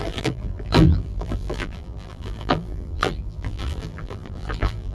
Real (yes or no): no